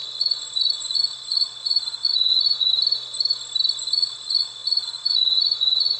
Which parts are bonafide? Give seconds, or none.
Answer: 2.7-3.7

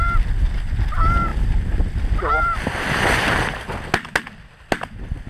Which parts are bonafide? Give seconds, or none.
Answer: 0.0-5.3